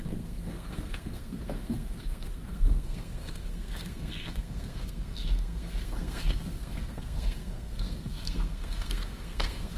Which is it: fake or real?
fake